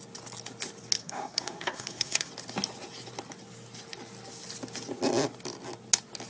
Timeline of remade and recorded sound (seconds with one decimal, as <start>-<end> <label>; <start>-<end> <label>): 0.0-1.0 recorded; 1.0-2.3 remade; 2.3-6.3 recorded